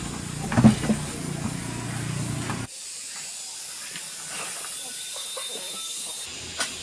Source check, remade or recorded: recorded